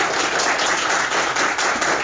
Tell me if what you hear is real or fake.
real